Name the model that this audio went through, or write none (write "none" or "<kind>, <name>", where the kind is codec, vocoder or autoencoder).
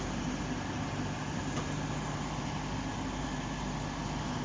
none